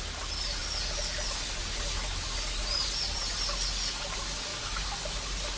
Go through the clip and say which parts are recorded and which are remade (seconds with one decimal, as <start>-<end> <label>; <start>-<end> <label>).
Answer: 0.0-5.6 recorded